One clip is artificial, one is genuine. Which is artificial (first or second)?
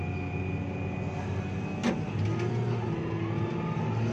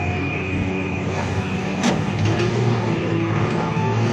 second